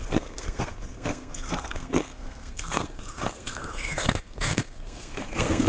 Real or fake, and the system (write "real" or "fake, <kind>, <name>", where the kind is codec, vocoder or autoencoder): fake, codec, SNAC